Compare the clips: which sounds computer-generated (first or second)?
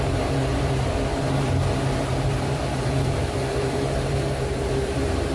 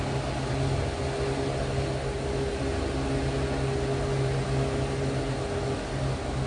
first